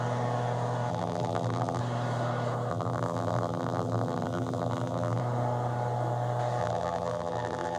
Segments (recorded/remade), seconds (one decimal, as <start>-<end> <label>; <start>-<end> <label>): 0.0-0.9 recorded; 0.9-1.8 remade; 1.8-2.7 recorded; 2.7-5.2 remade; 5.2-6.6 recorded; 6.6-7.8 remade